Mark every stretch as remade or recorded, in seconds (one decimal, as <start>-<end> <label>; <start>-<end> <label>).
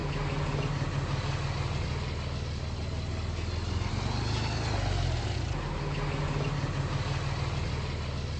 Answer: 0.0-8.4 recorded